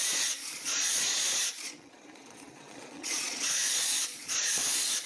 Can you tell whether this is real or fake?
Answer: fake